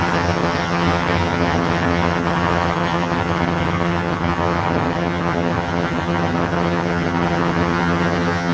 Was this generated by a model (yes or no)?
yes